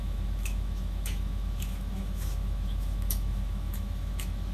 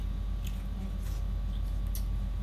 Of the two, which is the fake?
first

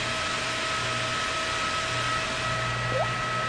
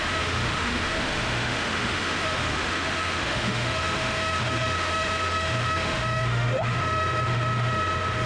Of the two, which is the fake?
second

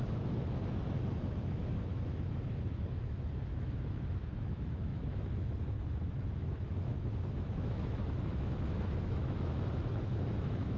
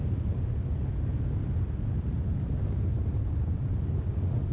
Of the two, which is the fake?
first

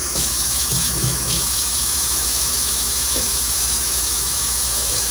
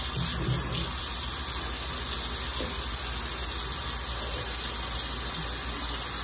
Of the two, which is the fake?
first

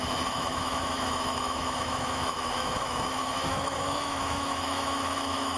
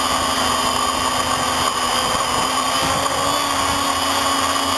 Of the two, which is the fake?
first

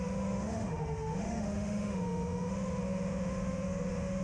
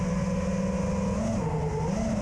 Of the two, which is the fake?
first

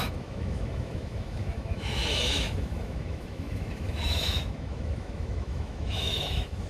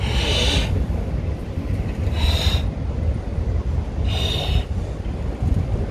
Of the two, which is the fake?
first